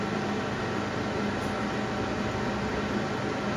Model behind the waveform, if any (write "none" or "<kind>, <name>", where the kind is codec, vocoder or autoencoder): none